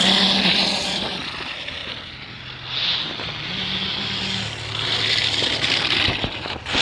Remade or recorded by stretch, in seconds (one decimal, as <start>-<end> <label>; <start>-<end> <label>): 0.0-6.8 recorded